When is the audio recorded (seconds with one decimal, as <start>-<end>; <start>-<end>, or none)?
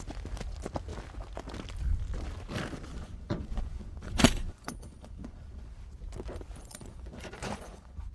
0.0-2.9; 5.7-6.6